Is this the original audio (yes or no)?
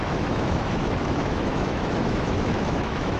no